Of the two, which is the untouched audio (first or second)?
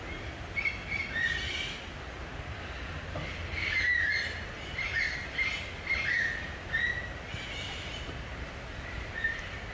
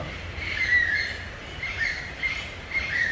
first